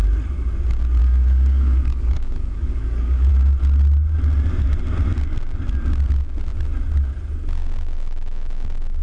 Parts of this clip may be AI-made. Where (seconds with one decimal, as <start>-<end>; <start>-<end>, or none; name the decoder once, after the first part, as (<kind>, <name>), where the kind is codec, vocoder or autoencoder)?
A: 1.0-3.3 (codec, DAC)